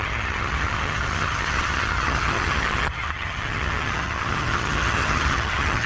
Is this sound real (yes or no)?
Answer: no